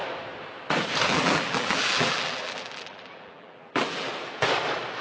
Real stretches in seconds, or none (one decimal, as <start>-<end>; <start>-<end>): 0.0-1.1; 4.1-5.0